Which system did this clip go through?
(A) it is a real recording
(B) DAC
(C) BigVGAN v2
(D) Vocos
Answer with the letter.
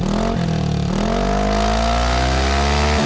A